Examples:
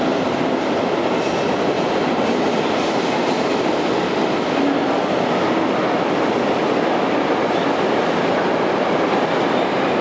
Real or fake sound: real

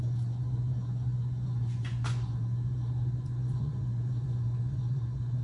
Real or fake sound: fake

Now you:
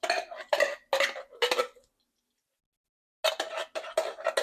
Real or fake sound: real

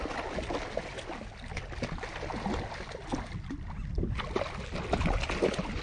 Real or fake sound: real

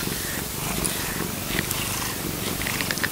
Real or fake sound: real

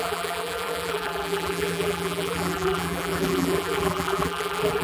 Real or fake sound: fake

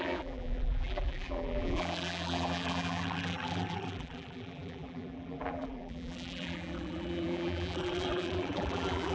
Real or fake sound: fake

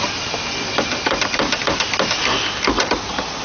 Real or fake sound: real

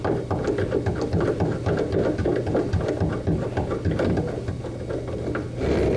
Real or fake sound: real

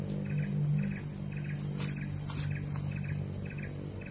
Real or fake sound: real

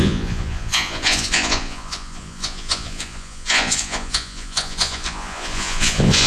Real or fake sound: fake